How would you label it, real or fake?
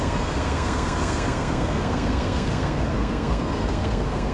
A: fake